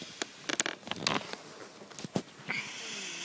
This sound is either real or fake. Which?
real